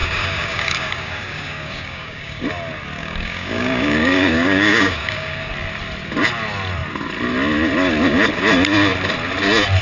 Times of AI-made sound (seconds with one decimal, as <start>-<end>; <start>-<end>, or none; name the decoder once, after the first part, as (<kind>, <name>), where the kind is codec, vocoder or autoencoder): 0.0-2.4 (codec, DAC); 3.0-5.5